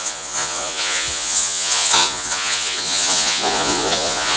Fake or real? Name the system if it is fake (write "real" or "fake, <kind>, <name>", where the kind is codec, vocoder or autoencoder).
fake, vocoder, Vocos